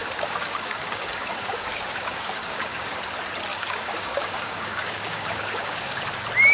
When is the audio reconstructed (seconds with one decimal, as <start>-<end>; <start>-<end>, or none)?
0.0-3.0; 3.5-6.1